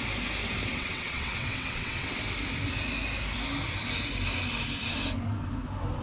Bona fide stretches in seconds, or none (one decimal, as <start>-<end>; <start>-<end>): 0.0-0.7; 2.2-6.0